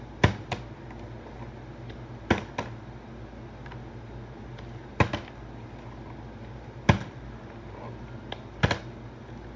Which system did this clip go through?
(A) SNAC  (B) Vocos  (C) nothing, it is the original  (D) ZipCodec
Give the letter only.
C